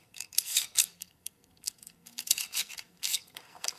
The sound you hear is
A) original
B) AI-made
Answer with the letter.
B